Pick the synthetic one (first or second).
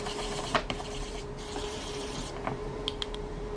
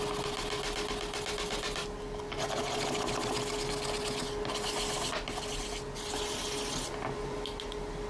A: first